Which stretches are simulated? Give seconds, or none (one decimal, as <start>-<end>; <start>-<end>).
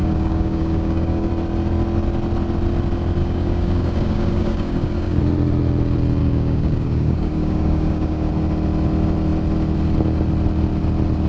0.0-1.3; 3.2-5.2; 6.2-8.3